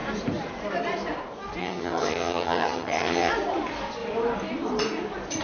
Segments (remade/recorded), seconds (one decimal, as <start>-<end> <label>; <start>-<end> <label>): 0.0-1.6 recorded; 1.6-3.3 remade; 3.3-5.4 recorded

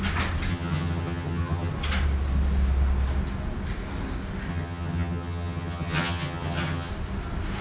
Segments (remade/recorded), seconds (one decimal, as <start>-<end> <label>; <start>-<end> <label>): 0.0-0.5 recorded; 0.5-1.7 remade; 1.7-4.5 recorded; 4.5-6.9 remade; 6.9-7.6 recorded

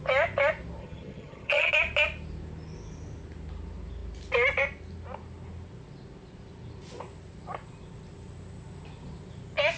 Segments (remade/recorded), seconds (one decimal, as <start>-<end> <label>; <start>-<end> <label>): 0.0-0.8 recorded; 0.8-1.7 remade; 1.7-9.8 recorded

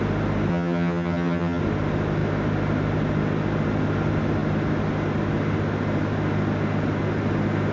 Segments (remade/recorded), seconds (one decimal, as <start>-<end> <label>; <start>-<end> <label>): 0.0-0.5 recorded; 0.5-1.6 remade; 1.6-7.7 recorded

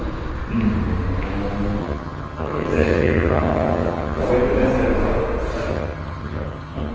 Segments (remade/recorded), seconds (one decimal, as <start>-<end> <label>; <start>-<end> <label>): 0.0-1.8 recorded; 1.8-4.2 remade; 4.2-5.7 recorded; 5.7-6.9 remade

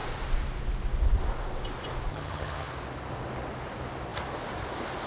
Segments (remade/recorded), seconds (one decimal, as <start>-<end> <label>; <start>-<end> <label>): 0.0-2.1 recorded; 2.1-2.7 remade; 2.7-5.1 recorded

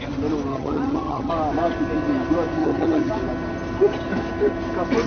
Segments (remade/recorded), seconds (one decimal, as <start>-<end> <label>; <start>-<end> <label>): 0.0-0.5 recorded; 0.5-1.3 remade; 1.3-2.6 recorded; 2.6-3.1 remade; 3.1-5.1 recorded

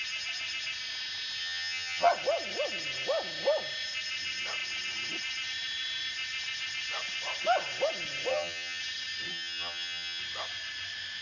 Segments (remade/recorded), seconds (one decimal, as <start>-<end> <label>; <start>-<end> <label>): 0.0-1.4 recorded; 1.4-2.1 remade; 2.1-8.3 recorded; 8.3-8.8 remade; 8.8-9.3 recorded; 9.3-10.2 remade; 10.2-11.2 recorded